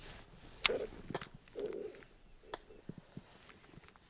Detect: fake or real real